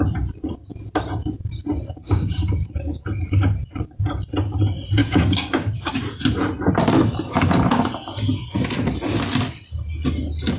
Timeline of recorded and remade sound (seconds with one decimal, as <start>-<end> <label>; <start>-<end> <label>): 0.0-2.0 recorded; 2.0-3.0 remade; 3.0-5.0 recorded; 5.0-5.9 remade; 5.9-10.6 recorded